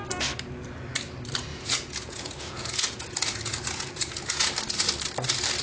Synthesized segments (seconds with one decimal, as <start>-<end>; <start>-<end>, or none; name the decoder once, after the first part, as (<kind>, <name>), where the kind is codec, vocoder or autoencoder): 1.5-4.5 (vocoder, Vocos)